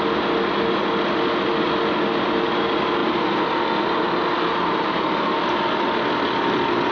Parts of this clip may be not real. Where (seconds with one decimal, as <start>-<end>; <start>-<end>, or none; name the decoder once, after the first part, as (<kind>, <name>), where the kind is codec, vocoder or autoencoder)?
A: none